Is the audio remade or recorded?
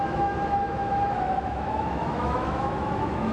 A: remade